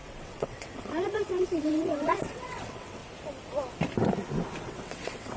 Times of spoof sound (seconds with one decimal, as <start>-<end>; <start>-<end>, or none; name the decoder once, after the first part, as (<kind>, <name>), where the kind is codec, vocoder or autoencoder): 0.0-3.0 (vocoder, WaveNeXt); 4.6-5.4